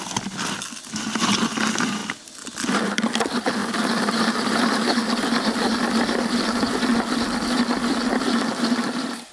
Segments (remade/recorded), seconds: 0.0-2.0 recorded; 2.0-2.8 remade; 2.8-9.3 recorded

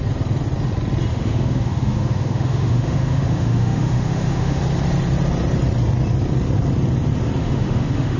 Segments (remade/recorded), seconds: 0.0-1.1 recorded; 1.1-4.6 remade; 4.6-7.4 recorded; 7.4-8.2 remade